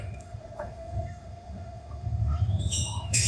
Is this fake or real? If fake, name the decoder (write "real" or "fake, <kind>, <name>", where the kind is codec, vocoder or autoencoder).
fake, autoencoder, DAC-VAE